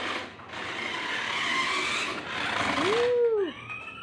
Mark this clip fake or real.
real